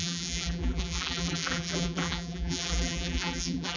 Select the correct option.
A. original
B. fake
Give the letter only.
B